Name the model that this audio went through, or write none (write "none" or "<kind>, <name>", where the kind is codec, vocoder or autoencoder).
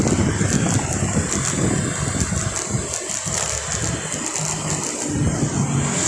none